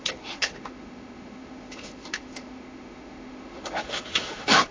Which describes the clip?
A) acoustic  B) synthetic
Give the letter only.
B